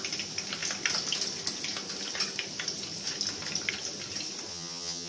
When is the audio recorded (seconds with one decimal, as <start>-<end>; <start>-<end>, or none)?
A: 0.0-4.5